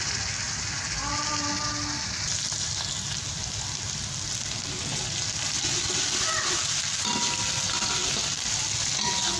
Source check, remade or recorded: recorded